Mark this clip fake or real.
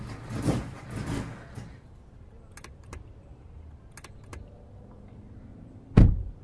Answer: real